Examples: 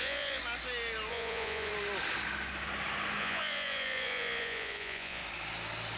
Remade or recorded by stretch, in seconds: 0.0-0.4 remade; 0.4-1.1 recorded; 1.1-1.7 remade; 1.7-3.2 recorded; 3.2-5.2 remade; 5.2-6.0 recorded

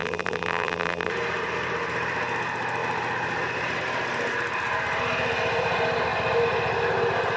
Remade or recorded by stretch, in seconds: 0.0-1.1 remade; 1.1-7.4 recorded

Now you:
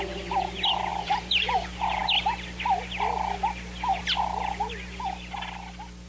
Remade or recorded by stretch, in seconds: 0.0-0.9 recorded; 0.9-1.6 remade; 1.6-6.1 recorded

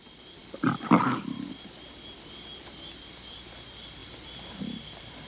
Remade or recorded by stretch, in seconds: 0.0-5.3 recorded